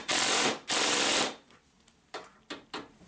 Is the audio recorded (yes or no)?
yes